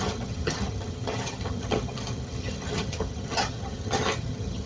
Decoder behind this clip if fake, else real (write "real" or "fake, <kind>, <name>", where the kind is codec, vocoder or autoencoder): fake, vocoder, HiFi-GAN